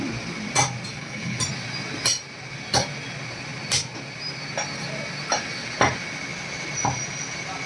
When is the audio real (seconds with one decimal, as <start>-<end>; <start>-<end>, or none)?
0.0-0.9; 1.4-7.7